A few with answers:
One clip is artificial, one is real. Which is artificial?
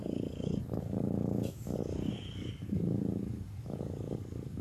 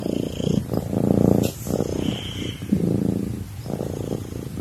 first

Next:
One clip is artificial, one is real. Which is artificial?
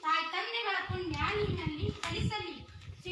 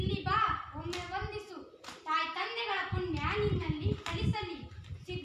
first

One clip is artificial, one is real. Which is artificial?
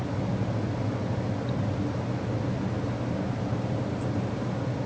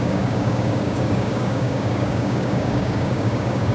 second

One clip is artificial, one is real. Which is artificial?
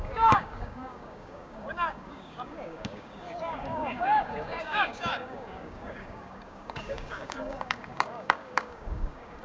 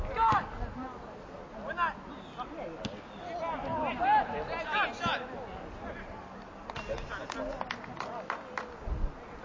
first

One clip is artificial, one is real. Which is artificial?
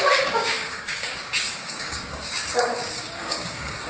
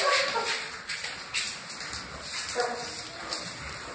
first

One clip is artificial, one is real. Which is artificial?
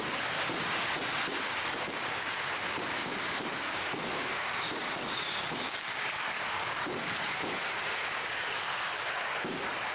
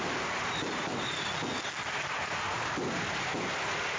first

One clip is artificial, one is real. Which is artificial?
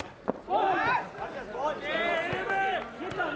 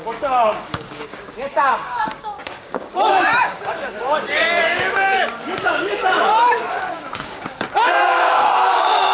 second